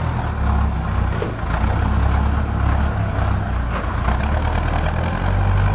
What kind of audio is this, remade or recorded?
recorded